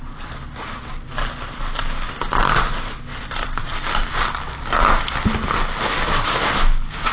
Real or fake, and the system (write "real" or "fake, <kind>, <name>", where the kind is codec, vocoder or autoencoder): real